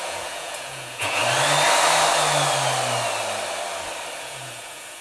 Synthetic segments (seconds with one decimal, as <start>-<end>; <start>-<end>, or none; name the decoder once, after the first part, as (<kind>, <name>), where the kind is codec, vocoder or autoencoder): 0.0-1.2 (vocoder, Vocos); 4.2-5.0